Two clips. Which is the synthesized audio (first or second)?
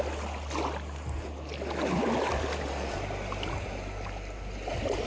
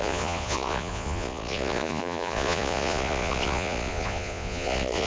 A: second